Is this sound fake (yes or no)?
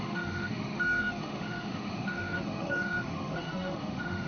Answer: yes